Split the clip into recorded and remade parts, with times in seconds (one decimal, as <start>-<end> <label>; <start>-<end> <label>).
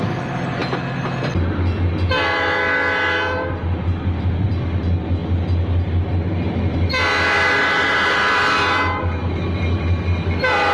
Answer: 0.0-10.7 recorded